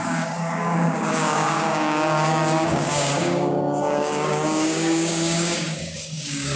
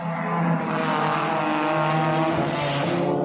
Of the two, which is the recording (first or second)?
second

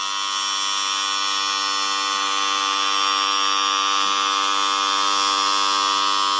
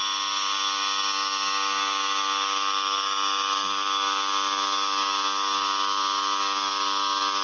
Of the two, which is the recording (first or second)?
first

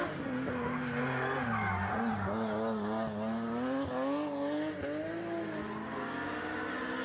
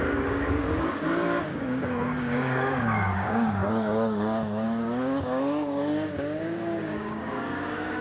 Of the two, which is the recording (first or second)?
first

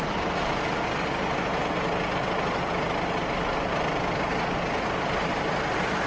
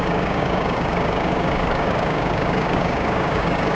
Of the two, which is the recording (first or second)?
first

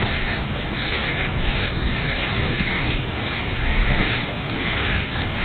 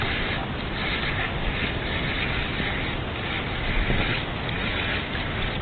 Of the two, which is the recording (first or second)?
second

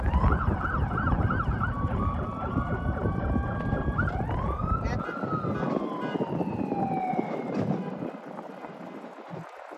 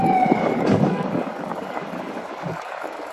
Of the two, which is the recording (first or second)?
first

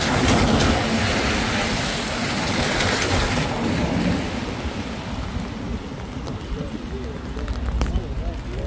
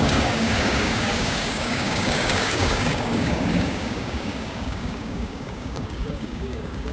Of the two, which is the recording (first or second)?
first